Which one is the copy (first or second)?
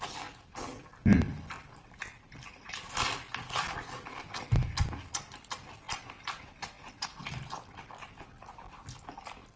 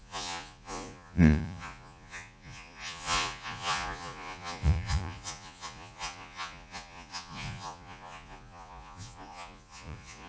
second